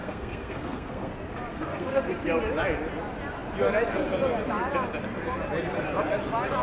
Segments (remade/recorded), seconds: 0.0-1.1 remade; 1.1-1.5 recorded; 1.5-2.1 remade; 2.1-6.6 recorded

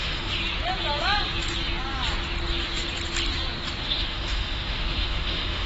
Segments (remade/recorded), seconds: 0.0-0.4 remade; 0.4-3.8 recorded; 3.8-5.7 remade

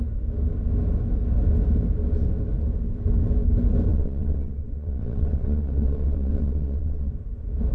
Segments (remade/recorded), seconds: 0.0-3.9 recorded; 3.9-7.1 remade; 7.1-7.7 recorded